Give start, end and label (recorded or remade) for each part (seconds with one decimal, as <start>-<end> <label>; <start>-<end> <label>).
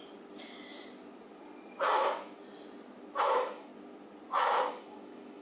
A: 0.0-3.2 recorded; 3.2-3.7 remade; 3.7-4.7 recorded; 4.7-5.4 remade